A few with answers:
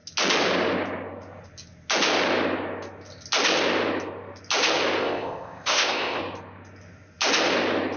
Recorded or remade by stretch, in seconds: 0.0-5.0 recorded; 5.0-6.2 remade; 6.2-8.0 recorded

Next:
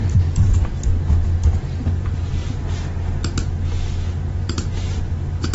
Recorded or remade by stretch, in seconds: 0.0-0.9 remade; 0.9-1.8 recorded; 1.8-2.6 remade; 2.6-4.4 recorded; 4.4-5.0 remade; 5.0-5.5 recorded

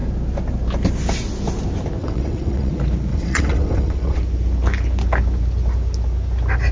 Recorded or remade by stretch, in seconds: 0.0-2.0 recorded; 2.0-2.7 remade; 2.7-3.1 recorded; 3.1-4.2 remade; 4.2-6.7 recorded